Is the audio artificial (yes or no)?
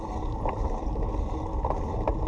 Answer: no